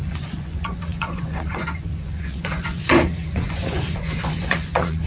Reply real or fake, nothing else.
fake